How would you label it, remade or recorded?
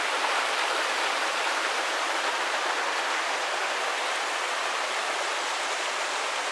recorded